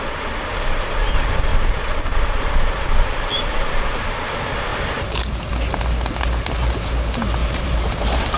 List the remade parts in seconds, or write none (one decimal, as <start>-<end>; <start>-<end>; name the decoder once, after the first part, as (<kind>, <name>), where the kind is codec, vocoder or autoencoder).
7.4-8.4 (vocoder, BigVGAN v2)